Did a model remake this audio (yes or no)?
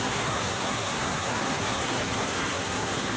yes